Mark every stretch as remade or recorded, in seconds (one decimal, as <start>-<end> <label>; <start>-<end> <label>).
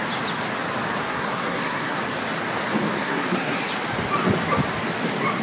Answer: 0.0-1.0 recorded; 1.0-2.0 remade; 2.0-3.0 recorded; 3.0-3.6 remade; 3.6-5.4 recorded